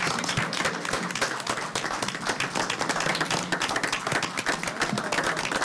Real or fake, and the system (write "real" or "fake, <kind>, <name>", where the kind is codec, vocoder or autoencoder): real